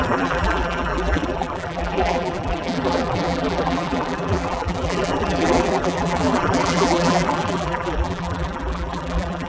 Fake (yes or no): yes